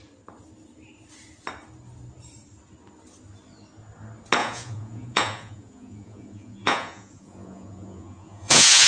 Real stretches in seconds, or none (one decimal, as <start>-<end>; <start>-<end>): 0.0-4.4